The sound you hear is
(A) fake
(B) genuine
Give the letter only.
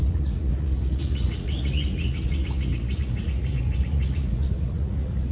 A